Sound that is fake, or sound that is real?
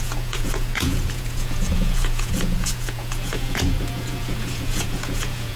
fake